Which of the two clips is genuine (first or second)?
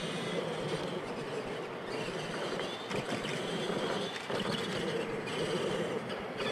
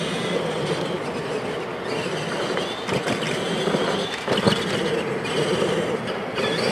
second